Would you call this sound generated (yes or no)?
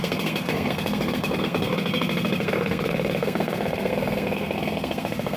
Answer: yes